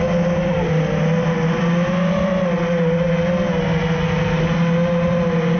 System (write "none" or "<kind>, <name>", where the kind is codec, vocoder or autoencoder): none